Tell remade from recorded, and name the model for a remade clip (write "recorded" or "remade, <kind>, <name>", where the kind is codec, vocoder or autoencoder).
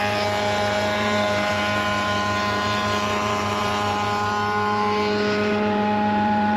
remade, vocoder, BigVGAN v2